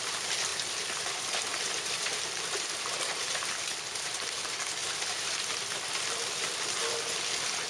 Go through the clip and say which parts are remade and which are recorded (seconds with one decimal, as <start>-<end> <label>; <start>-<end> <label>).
0.0-0.5 recorded; 0.5-1.0 remade; 1.0-4.8 recorded; 4.8-6.6 remade; 6.6-7.7 recorded

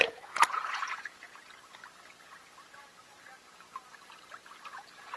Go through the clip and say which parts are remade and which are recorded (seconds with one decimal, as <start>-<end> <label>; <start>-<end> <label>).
0.0-1.4 remade; 1.4-4.5 recorded; 4.5-5.2 remade

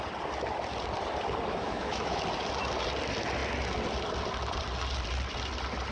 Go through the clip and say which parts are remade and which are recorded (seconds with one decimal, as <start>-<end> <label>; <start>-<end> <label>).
0.0-1.5 recorded; 1.5-2.2 remade; 2.2-5.9 recorded

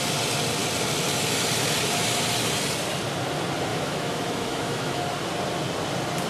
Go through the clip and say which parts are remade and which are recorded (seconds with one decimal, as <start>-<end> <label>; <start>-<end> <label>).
0.0-3.7 recorded; 3.7-5.0 remade; 5.0-6.3 recorded

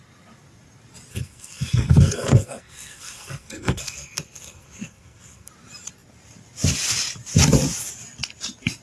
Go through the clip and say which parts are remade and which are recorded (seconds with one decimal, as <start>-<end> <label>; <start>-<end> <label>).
0.0-1.1 recorded; 1.1-5.5 remade; 5.5-8.8 recorded

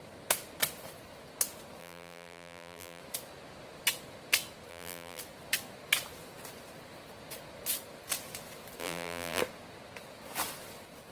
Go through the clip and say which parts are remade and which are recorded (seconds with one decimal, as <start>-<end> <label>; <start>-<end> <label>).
0.0-1.8 recorded; 1.8-3.0 remade; 3.0-4.7 recorded; 4.7-5.2 remade; 5.2-8.8 recorded; 8.8-9.4 remade; 9.4-11.1 recorded

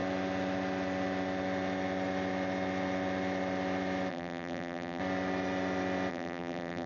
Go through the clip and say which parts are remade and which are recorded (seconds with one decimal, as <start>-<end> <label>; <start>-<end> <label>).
0.0-4.1 recorded; 4.1-5.0 remade; 5.0-6.1 recorded; 6.1-6.9 remade

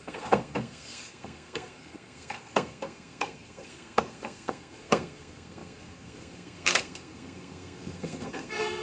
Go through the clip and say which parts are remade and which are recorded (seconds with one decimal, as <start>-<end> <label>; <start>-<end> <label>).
0.0-8.8 remade